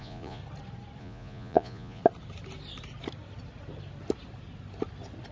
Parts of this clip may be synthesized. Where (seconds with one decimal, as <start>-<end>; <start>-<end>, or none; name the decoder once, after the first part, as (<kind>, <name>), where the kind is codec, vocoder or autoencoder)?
0.0-0.4 (vocoder, Vocos); 1.0-2.0